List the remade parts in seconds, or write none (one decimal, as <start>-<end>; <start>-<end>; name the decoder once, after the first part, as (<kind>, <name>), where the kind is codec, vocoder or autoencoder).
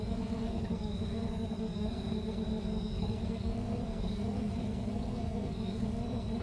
0.0-6.4 (codec, SNAC)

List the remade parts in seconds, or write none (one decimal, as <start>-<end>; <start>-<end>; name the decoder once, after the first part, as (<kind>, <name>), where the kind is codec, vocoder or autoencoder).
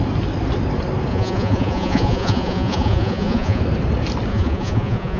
1.1-3.6 (vocoder, Vocos); 4.3-5.2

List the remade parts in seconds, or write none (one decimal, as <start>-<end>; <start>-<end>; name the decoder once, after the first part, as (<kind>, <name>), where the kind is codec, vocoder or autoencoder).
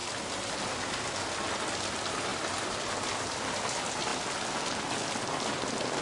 none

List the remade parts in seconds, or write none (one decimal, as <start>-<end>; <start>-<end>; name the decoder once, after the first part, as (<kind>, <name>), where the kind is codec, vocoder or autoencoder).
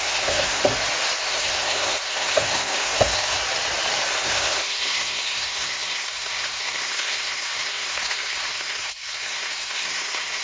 0.0-0.6 (codec, SNAC); 1.2-3.4; 4.1-10.4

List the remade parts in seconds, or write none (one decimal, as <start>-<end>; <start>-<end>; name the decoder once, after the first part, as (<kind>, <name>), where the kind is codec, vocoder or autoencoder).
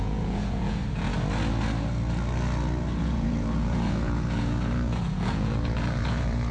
0.0-0.8 (vocoder, Vocos); 3.0-6.5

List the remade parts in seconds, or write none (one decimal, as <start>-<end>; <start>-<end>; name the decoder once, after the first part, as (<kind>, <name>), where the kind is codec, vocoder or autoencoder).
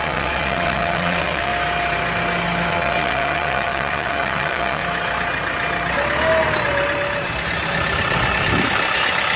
0.0-1.5 (vocoder, WaveNeXt); 2.7-4.8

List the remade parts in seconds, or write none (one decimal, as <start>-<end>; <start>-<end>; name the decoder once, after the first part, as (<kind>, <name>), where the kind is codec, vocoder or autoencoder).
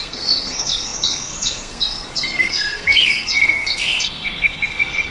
0.0-5.1 (codec, SNAC)